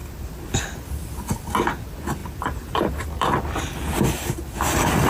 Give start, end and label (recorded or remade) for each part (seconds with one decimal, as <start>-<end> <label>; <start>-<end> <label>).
0.0-2.2 recorded; 2.2-3.4 remade; 3.4-5.1 recorded